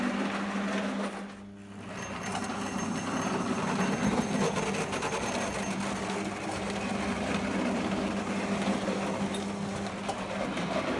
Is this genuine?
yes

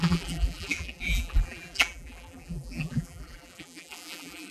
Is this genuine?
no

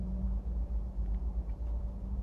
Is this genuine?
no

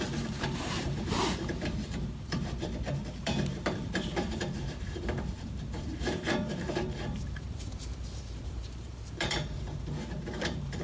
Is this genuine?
no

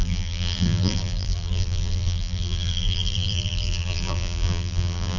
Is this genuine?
no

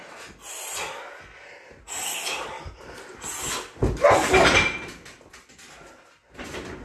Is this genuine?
yes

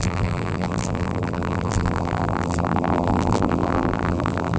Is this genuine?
no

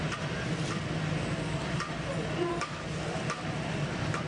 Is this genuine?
no